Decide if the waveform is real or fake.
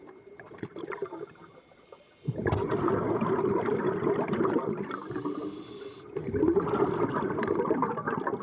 real